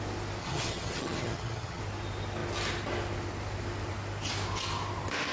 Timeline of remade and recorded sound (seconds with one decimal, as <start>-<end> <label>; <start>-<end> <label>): 0.0-0.4 recorded; 0.4-1.8 remade; 1.8-5.3 recorded